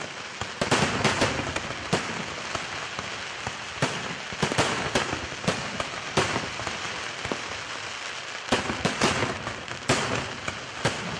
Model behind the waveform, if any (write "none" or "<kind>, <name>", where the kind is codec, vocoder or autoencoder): none